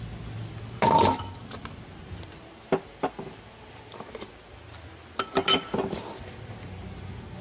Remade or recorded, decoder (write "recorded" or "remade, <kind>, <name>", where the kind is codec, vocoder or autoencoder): recorded